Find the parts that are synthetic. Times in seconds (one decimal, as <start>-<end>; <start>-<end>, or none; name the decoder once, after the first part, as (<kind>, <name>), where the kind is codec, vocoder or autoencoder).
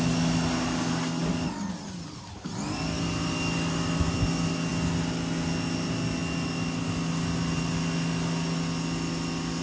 none